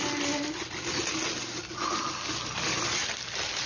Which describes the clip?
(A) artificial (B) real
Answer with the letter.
B